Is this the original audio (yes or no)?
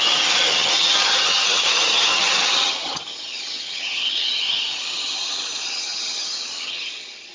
no